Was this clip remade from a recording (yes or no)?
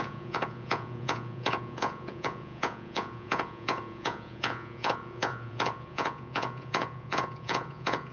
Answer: yes